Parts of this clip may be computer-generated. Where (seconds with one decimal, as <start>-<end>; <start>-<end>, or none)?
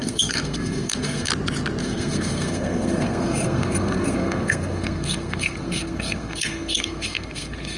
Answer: 0.0-1.3; 1.8-7.8